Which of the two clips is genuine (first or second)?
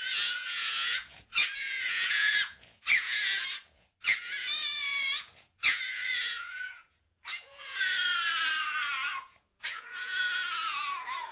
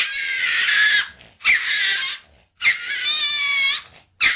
second